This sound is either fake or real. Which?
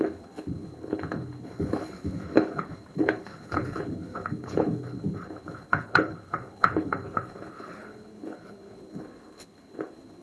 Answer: fake